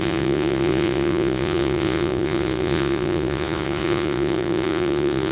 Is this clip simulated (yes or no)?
yes